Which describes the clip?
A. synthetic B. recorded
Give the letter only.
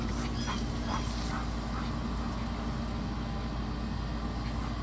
B